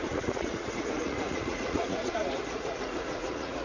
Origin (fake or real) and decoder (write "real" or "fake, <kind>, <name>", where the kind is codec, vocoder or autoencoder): fake, vocoder, Vocos